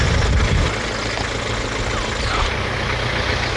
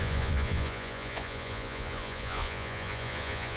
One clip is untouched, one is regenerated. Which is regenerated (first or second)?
second